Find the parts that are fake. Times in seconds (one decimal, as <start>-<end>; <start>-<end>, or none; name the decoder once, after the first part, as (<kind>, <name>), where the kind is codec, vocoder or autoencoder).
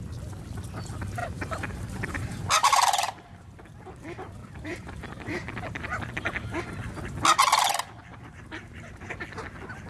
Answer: 1.2-3.6 (vocoder, BigVGAN v2); 4.4-6.6; 8.1-9.1